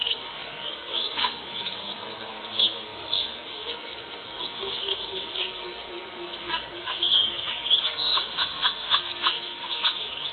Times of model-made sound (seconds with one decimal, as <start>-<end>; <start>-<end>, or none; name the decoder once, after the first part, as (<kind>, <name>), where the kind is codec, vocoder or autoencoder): 0.0-10.3 (codec, SNAC)